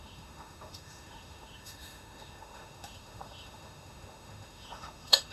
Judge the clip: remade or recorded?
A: remade